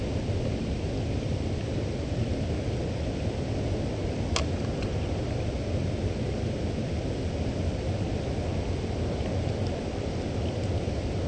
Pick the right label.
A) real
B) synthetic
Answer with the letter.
A